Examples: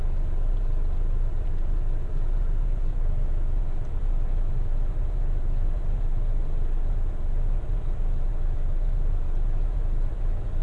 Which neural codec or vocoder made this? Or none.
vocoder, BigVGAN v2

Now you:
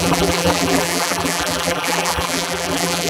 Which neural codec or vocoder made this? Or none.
vocoder, BigVGAN v2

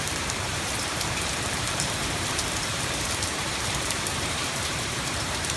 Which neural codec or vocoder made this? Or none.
vocoder, BigVGAN v2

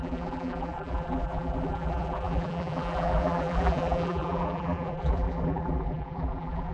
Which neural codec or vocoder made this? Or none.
vocoder, BigVGAN v2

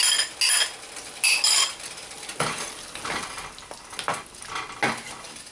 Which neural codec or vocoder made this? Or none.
none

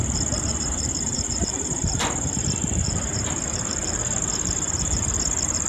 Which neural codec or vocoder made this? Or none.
vocoder, BigVGAN v2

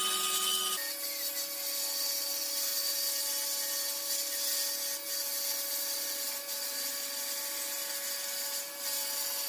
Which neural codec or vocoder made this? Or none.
none